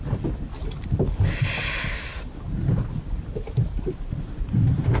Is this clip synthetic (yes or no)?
no